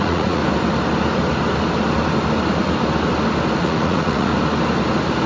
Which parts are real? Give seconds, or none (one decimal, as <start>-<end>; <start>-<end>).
0.4-3.6; 4.3-5.3